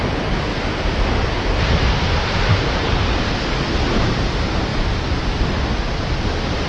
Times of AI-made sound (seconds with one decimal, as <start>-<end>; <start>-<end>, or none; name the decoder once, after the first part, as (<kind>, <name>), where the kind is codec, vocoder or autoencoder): none